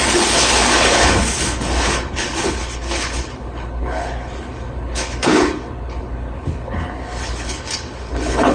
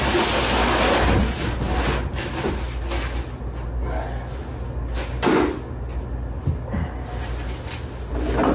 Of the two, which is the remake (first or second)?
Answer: first